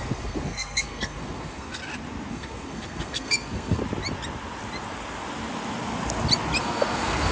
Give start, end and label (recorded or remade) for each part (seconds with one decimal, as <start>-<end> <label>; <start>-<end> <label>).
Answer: 0.0-1.8 remade; 1.8-2.3 recorded; 2.3-3.8 remade; 3.8-6.6 recorded; 6.6-7.3 remade